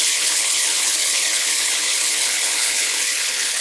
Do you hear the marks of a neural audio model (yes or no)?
yes